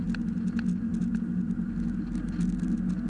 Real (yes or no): yes